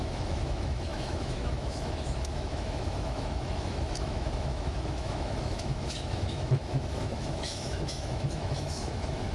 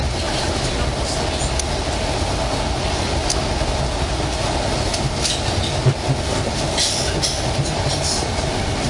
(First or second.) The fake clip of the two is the first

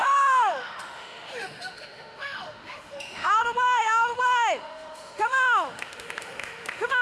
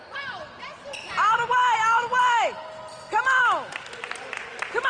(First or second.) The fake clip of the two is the first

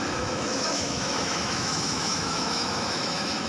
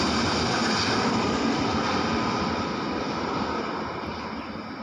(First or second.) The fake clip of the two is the first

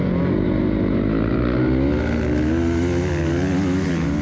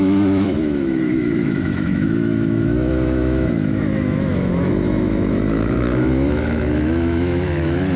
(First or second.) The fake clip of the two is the second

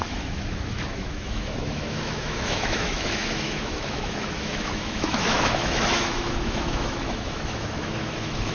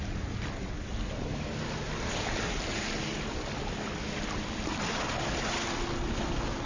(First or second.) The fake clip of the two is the first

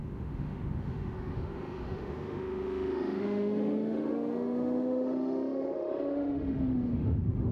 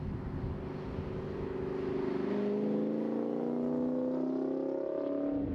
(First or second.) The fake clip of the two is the first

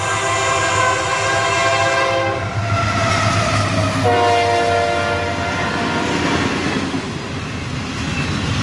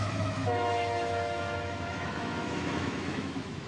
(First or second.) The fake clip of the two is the second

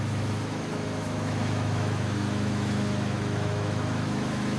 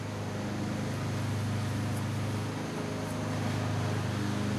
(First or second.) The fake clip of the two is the first